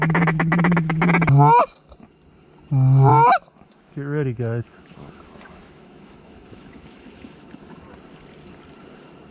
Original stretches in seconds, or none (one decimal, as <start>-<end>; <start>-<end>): 0.0-3.1; 7.8-9.3